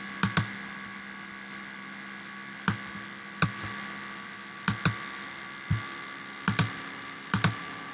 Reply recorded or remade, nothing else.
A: recorded